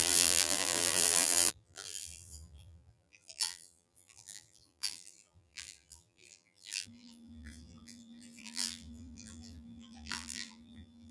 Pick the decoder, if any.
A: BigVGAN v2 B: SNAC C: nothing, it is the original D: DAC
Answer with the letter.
A